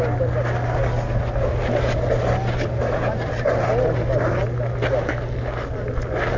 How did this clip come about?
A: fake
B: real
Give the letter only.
B